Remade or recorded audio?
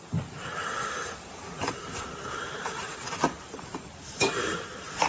remade